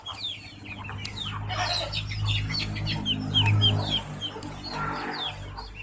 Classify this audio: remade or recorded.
recorded